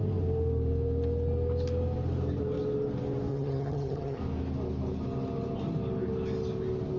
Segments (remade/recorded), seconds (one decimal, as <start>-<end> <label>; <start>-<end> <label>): 0.0-3.3 recorded; 3.3-4.2 remade; 4.2-7.0 recorded